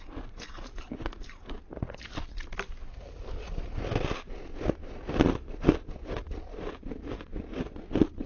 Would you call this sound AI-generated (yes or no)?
no